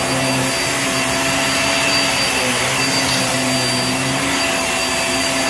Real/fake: real